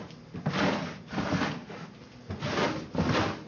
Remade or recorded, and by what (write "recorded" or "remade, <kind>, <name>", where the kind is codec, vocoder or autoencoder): recorded